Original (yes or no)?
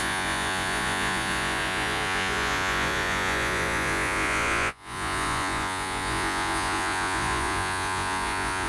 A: no